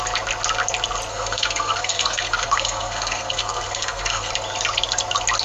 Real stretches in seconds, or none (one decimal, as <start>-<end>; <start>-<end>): 0.0-1.1; 4.3-5.4